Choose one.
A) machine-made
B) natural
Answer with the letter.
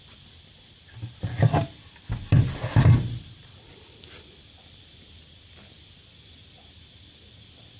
B